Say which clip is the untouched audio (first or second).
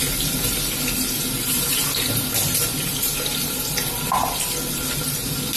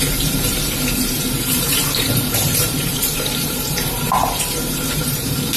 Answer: first